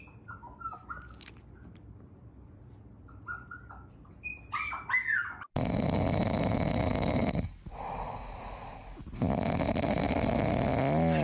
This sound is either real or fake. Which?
real